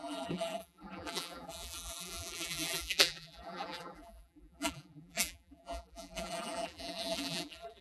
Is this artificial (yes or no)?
yes